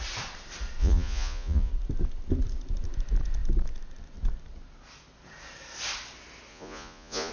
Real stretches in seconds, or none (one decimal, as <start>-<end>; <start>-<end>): 0.0-0.8; 1.7-6.5